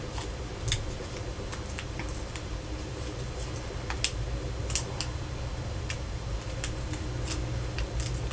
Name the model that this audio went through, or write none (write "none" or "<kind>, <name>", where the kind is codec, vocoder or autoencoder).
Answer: none